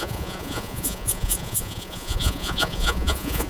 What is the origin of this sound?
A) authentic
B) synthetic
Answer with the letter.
B